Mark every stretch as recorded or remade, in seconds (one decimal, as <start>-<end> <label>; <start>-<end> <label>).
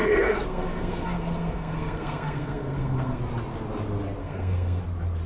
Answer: 0.0-3.2 remade; 3.2-4.2 recorded; 4.2-4.8 remade; 4.8-5.3 recorded